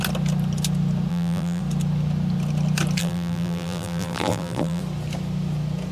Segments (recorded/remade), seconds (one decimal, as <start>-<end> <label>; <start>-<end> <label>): 0.0-1.1 recorded; 1.1-1.6 remade; 1.6-3.0 recorded; 3.0-4.8 remade; 4.8-5.9 recorded